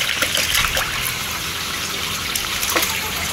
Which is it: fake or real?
real